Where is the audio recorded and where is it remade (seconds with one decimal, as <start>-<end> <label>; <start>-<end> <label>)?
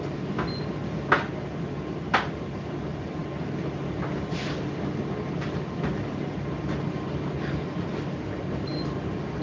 0.0-9.4 recorded